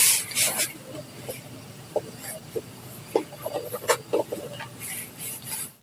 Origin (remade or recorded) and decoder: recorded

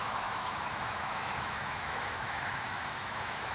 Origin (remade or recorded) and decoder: remade, autoencoder, DAC-VAE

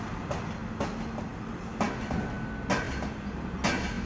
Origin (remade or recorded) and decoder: recorded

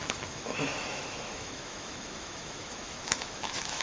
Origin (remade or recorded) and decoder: remade, autoencoder, DAC-VAE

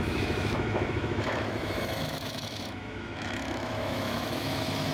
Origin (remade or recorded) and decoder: remade, autoencoder, DAC-VAE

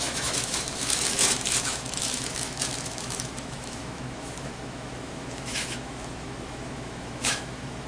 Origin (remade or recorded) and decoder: remade, autoencoder, DAC-VAE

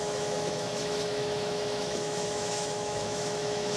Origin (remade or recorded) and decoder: remade, autoencoder, DAC-VAE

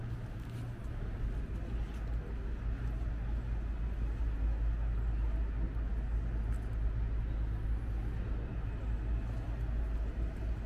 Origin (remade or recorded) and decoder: recorded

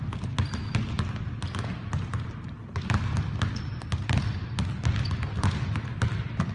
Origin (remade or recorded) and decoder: recorded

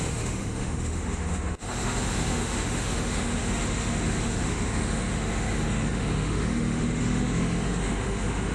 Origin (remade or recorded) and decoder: remade, autoencoder, DAC-VAE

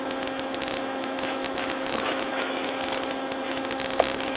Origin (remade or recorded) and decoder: remade, autoencoder, DAC-VAE